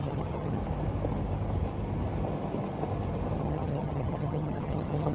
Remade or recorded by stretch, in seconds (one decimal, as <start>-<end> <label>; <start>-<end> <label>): 0.0-0.6 remade; 0.6-3.4 recorded; 3.4-5.1 remade